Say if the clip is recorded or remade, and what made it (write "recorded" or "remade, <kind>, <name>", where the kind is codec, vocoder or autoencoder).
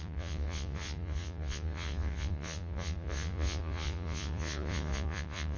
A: remade, vocoder, Vocos